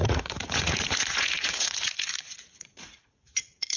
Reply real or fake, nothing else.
fake